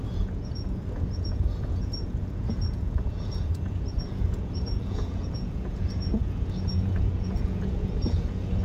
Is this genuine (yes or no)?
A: no